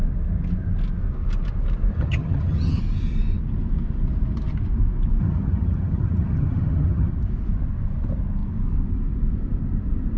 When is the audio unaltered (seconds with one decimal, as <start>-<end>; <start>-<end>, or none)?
0.0-1.9; 2.8-5.2; 7.1-10.2